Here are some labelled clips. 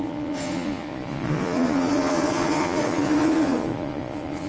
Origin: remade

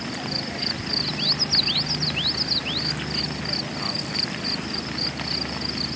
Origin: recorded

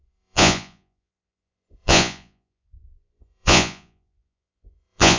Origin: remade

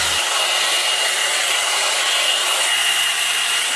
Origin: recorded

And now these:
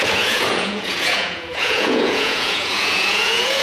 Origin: remade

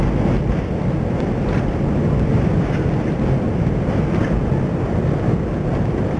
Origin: recorded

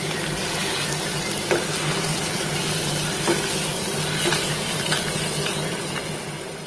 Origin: recorded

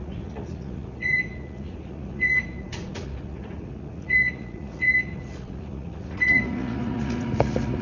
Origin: remade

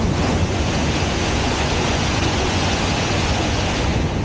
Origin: remade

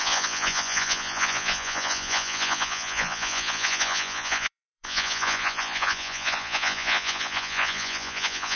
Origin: remade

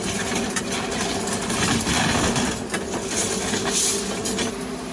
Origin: recorded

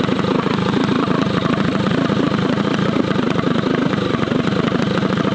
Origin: recorded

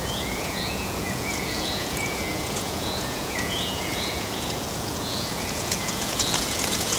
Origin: remade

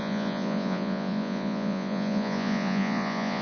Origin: remade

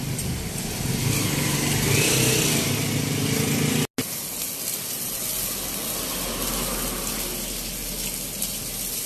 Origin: recorded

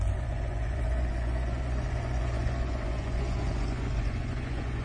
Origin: remade